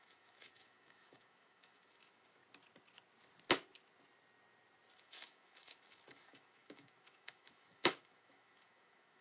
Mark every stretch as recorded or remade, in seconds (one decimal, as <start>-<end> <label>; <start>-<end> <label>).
0.0-2.4 remade; 2.4-4.9 recorded; 4.9-9.2 remade